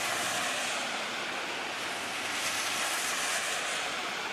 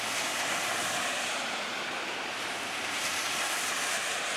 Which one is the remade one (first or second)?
second